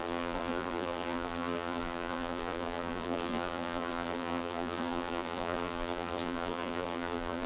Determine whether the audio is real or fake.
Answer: fake